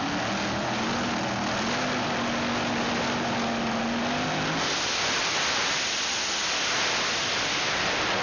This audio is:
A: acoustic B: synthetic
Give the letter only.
A